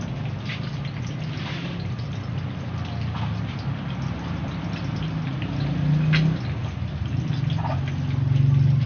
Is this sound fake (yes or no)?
no